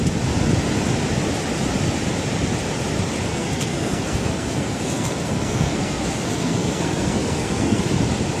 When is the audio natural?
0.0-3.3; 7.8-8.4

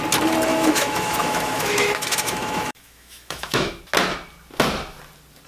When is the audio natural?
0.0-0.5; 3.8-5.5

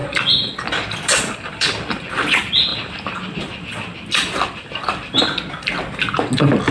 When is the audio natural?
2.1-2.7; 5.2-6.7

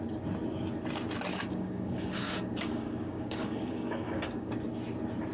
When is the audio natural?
0.0-1.3; 4.5-5.3

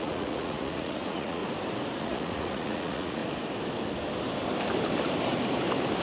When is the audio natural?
1.4-2.0; 3.2-6.0

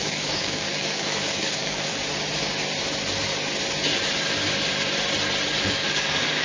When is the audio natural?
1.9-5.7

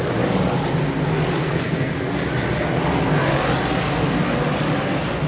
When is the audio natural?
0.0-1.4; 2.1-5.3

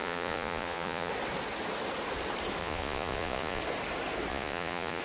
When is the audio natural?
1.1-2.6; 3.6-4.3